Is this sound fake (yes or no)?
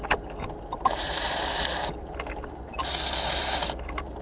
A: no